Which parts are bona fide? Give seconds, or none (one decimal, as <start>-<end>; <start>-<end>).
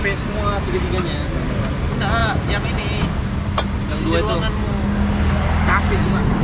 0.0-6.4